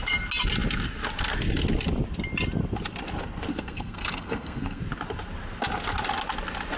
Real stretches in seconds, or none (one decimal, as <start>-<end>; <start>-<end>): 0.0-3.5; 4.8-6.8